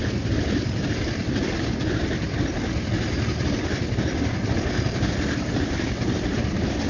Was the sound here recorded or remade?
remade